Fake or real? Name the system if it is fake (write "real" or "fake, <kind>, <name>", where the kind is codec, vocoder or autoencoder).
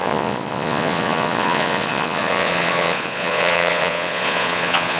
fake, vocoder, Vocos